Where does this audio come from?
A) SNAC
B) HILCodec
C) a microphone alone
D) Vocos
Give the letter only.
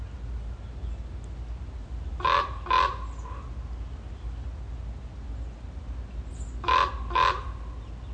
C